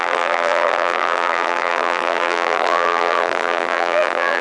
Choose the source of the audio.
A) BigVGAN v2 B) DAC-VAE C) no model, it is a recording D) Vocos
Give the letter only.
A